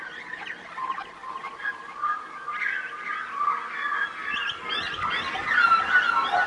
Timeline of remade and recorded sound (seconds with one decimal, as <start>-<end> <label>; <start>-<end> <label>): 0.0-6.5 recorded